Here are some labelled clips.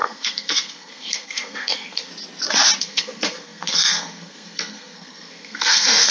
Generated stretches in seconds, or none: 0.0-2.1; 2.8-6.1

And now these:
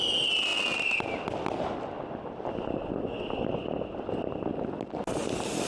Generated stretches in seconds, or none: none

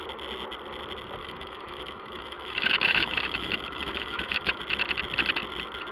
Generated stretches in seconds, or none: 1.2-4.6

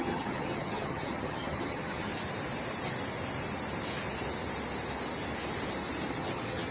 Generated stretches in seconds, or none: 0.0-2.1; 6.1-6.7

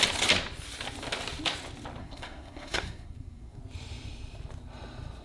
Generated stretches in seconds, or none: 2.0-3.6